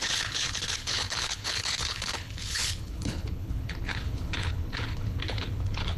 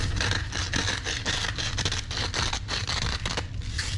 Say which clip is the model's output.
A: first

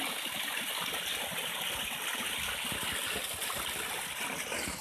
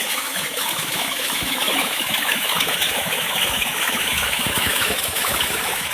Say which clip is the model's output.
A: second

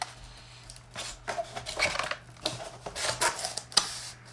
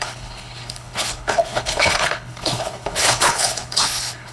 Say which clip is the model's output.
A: second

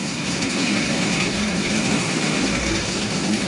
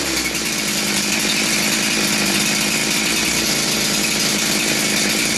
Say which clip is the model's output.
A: first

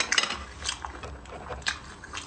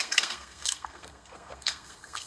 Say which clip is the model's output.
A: second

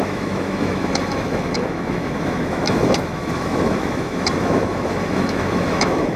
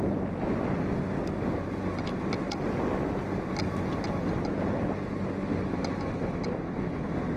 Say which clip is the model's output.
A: first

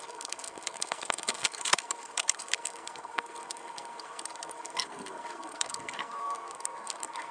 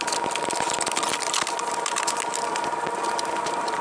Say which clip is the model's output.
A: first